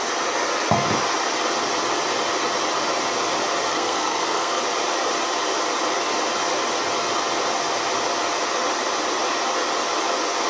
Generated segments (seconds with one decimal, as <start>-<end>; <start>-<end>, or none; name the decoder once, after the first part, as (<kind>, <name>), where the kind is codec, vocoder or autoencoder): 3.7-4.6 (codec, SNAC)